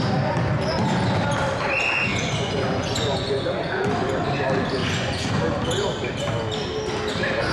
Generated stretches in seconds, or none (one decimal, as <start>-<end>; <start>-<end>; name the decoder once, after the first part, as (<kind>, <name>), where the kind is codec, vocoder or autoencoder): 2.1-3.9 (vocoder, Vocos); 4.8-5.4